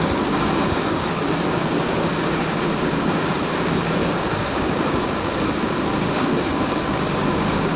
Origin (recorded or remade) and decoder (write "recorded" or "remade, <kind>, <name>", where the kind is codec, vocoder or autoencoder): remade, codec, DAC